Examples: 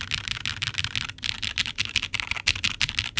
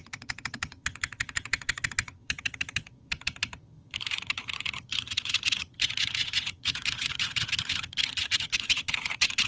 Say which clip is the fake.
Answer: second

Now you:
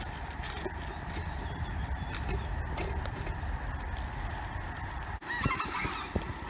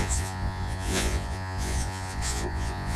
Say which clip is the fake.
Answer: second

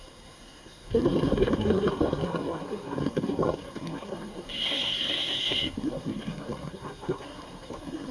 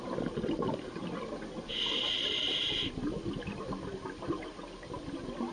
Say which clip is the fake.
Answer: first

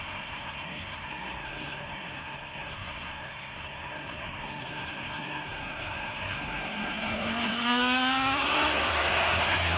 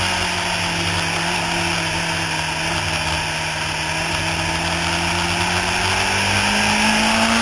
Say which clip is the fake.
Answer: first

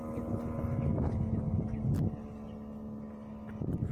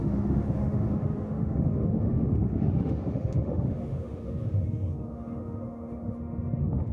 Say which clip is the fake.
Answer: second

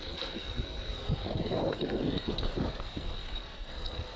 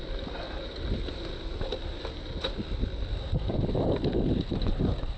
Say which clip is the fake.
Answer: first